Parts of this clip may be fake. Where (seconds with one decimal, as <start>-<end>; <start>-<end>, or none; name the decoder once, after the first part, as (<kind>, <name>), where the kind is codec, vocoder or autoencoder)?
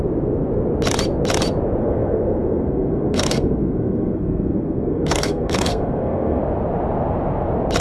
1.8-6.4 (codec, SNAC)